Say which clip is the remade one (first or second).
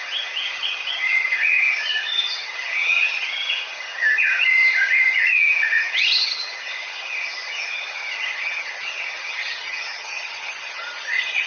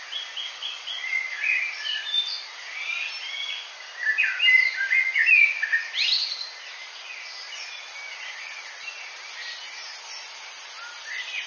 first